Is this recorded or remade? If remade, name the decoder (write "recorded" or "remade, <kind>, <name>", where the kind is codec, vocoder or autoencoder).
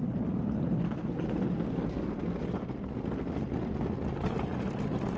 recorded